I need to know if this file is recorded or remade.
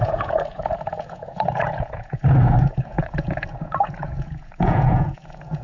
remade